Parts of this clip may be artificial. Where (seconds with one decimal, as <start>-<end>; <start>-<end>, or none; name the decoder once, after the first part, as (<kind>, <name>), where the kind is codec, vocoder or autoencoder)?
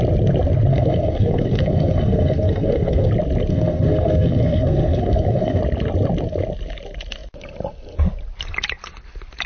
0.7-3.1 (codec, SNAC); 3.5-5.6